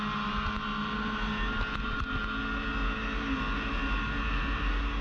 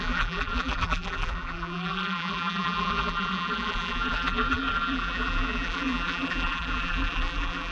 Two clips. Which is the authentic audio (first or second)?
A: first